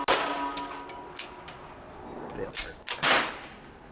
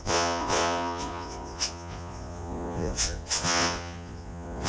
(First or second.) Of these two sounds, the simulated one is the second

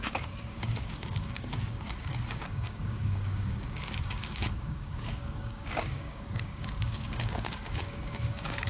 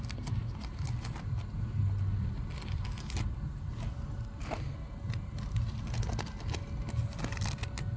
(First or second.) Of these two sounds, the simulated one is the first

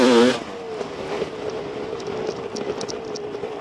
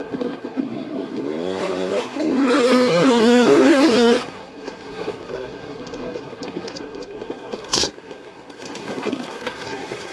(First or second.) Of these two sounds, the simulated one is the second